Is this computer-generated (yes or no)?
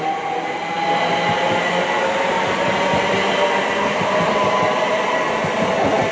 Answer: no